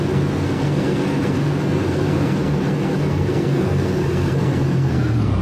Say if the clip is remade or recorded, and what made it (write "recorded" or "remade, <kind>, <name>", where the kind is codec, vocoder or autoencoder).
remade, codec, SNAC